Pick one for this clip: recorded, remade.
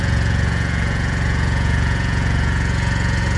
remade